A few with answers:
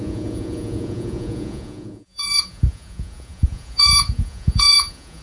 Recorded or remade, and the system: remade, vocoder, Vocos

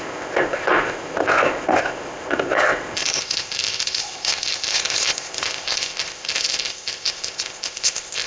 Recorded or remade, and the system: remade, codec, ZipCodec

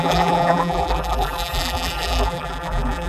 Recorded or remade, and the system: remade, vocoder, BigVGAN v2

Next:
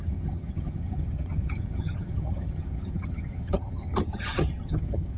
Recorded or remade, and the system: remade, vocoder, HiFi-GAN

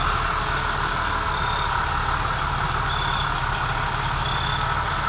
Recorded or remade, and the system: recorded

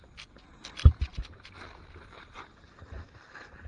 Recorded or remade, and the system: recorded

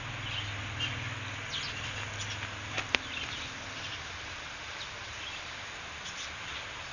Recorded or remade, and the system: recorded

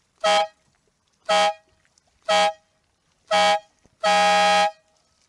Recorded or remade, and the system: recorded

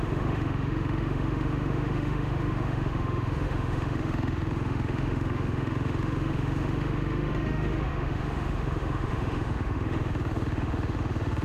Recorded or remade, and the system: remade, autoencoder, DAC-VAE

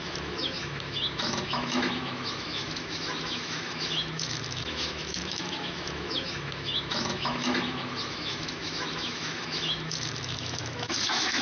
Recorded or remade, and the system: remade, autoencoder, DAC-VAE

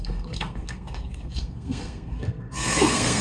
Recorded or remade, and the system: remade, codec, SNAC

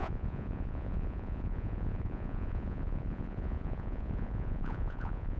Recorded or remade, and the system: remade, vocoder, Vocos